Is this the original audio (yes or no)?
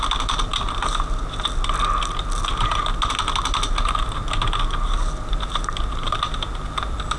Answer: yes